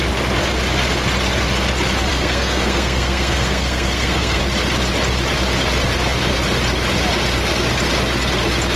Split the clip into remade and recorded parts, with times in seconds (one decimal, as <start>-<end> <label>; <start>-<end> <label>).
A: 0.0-2.1 recorded; 2.1-4.4 remade; 4.4-8.8 recorded